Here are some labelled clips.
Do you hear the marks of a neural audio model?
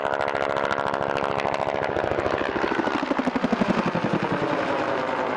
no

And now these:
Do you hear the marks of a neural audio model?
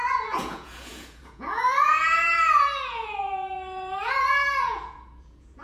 yes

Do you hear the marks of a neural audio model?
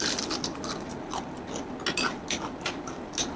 no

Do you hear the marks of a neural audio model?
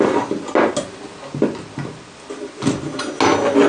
no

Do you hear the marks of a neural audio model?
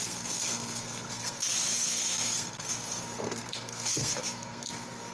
yes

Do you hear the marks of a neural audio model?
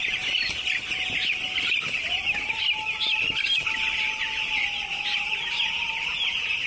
no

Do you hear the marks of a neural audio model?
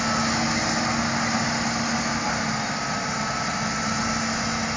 no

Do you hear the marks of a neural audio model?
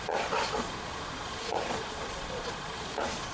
yes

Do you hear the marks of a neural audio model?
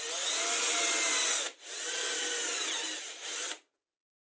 no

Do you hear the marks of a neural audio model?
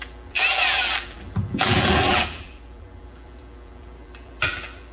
yes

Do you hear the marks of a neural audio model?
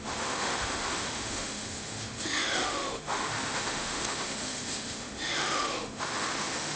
yes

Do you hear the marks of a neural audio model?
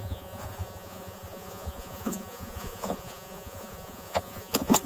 yes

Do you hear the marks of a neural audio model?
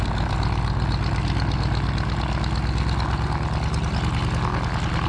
no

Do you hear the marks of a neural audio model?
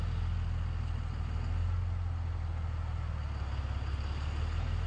no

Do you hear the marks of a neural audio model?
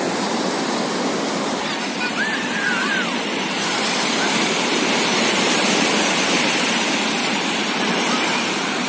yes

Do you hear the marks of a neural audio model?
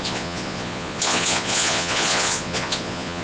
yes